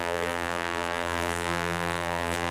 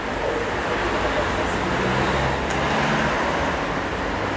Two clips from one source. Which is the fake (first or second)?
first